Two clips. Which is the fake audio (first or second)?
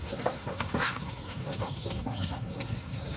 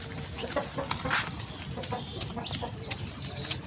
first